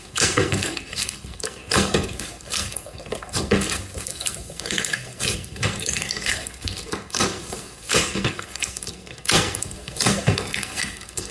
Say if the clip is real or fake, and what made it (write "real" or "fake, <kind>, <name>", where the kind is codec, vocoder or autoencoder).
fake, codec, SNAC